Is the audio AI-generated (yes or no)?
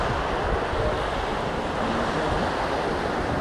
no